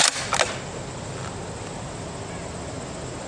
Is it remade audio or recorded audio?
recorded